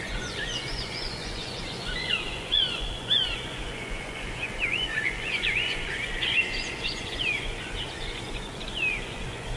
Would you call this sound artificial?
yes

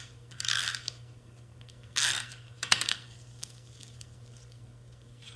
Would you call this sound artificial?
yes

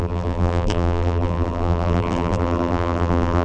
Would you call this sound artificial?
yes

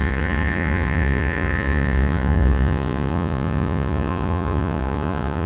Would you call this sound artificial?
yes